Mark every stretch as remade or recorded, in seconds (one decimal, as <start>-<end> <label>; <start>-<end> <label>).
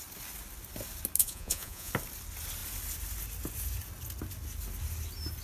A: 0.0-1.2 recorded; 1.2-1.9 remade; 1.9-5.4 recorded